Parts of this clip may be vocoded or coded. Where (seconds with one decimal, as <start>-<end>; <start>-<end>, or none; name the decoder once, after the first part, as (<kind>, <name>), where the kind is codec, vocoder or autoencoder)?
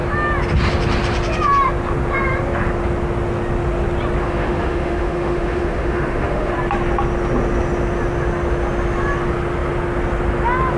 4.2-6.5 (autoencoder, DAC-VAE)